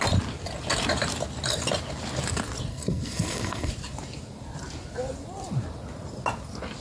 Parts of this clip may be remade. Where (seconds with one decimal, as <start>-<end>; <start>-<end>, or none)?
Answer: 2.7-3.7

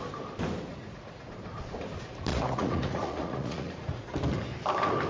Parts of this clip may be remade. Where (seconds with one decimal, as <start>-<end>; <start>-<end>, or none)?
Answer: 0.7-1.3; 2.3-4.1